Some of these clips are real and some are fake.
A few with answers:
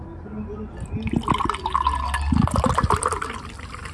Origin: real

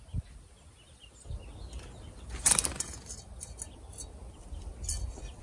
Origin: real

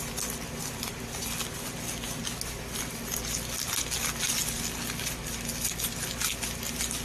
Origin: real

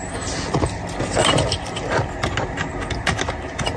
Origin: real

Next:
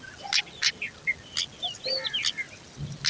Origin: real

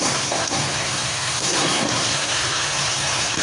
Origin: fake